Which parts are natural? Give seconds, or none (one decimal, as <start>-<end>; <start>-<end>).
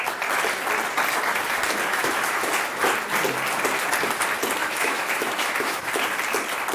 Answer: 0.0-1.9; 2.5-4.6; 5.9-6.7